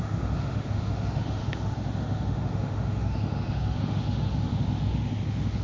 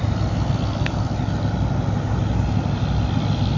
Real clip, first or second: second